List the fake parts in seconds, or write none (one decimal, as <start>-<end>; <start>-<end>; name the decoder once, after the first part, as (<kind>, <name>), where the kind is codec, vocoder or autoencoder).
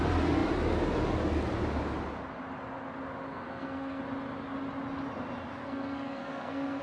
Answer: 3.3-4.0 (codec, SNAC); 5.6-6.8